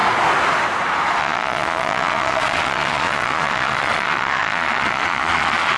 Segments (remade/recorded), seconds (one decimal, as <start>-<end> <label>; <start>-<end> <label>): 0.0-1.2 recorded; 1.2-5.8 remade